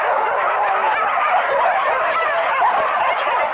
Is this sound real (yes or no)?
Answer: yes